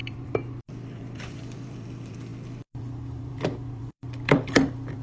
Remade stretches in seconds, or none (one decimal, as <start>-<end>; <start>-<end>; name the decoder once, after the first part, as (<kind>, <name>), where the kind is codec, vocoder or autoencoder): 0.0-5.0 (vocoder, BigVGAN v2)